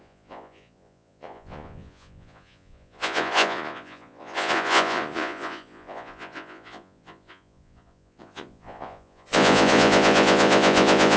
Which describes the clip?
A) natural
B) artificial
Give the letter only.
B